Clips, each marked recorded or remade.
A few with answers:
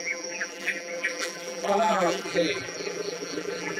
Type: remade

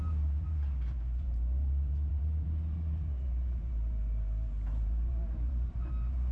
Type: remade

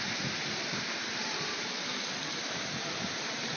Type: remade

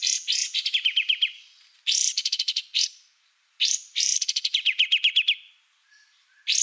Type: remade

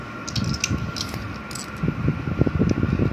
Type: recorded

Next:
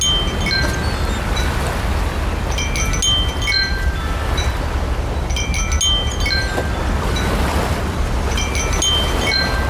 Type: recorded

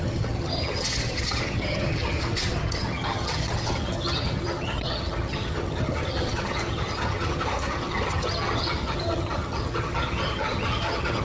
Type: remade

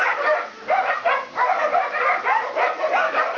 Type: recorded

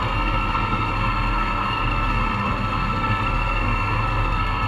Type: remade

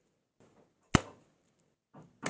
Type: recorded